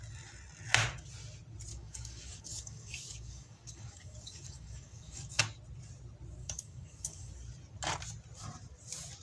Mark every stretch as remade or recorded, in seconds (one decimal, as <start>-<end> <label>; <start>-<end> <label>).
0.0-1.7 recorded; 1.7-5.4 remade; 5.4-6.4 recorded; 6.4-7.3 remade; 7.3-9.2 recorded